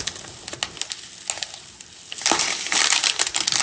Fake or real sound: real